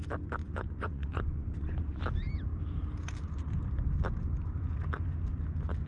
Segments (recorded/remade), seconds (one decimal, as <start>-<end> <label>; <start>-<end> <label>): 0.0-0.4 recorded; 0.4-2.0 remade; 2.0-5.9 recorded